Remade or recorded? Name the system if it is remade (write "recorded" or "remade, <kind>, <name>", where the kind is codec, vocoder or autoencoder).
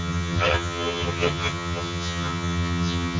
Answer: remade, vocoder, HiFi-GAN